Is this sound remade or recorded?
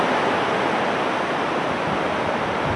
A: recorded